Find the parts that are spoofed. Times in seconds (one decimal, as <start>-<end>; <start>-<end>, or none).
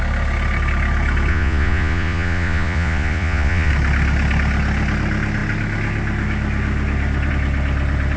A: 1.3-3.7